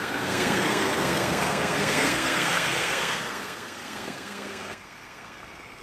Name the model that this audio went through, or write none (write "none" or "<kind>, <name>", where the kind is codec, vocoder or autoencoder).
codec, SNAC